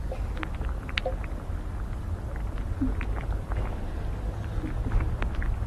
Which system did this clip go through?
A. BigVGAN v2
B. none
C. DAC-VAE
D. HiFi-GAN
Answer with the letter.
B